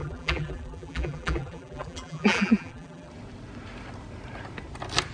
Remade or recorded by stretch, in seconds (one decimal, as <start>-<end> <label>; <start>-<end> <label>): 0.0-3.1 remade; 3.1-5.1 recorded